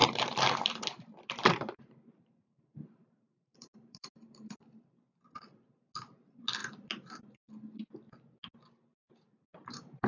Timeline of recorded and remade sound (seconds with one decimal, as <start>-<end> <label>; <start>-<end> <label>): 0.0-4.9 remade; 4.9-8.9 recorded; 8.9-10.1 remade